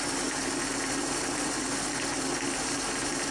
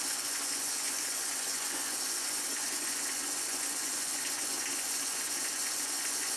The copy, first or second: second